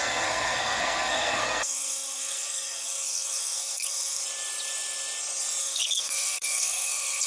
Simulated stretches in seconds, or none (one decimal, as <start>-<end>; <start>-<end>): 0.0-4.2; 5.6-7.3